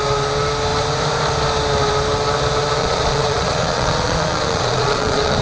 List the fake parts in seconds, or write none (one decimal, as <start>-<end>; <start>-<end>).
2.8-5.4